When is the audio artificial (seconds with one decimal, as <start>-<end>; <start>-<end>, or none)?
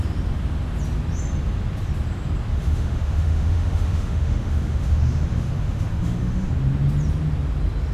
2.5-6.5